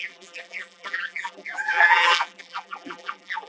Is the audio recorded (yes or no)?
no